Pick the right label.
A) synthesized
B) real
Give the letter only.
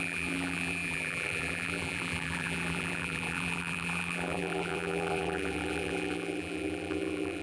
A